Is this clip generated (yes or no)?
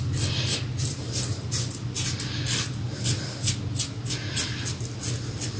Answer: no